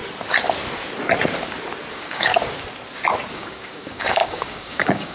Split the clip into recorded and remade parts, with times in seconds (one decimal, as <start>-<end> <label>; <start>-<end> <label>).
0.0-1.9 recorded; 1.9-2.3 remade; 2.3-3.3 recorded; 3.3-5.1 remade